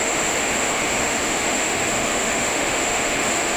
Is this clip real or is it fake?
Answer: fake